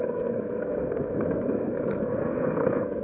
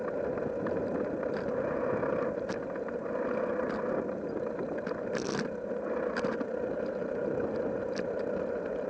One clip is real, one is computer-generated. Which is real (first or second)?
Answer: second